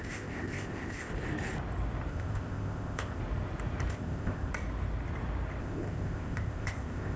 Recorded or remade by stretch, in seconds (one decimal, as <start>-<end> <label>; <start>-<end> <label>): 0.0-1.1 remade; 1.1-2.1 recorded; 2.1-3.2 remade; 3.2-3.9 recorded; 3.9-4.5 remade; 4.5-5.6 recorded; 5.6-7.2 remade